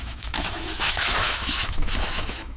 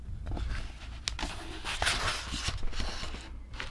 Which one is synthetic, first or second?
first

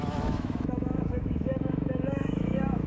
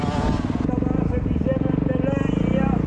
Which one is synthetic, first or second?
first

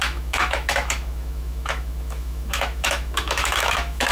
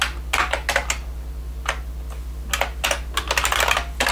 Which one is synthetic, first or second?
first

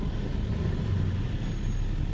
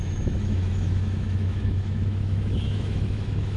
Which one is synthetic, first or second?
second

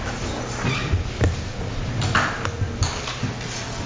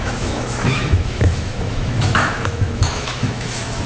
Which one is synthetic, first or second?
second